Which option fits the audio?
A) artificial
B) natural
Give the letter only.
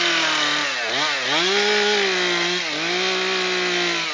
B